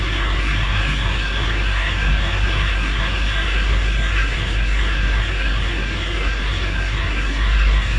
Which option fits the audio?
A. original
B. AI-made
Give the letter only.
B